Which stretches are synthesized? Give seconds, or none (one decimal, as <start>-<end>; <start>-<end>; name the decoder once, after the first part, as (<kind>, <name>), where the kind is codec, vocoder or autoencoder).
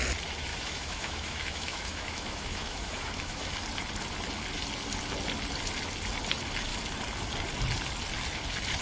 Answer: 0.5-3.5 (autoencoder, DAC-VAE)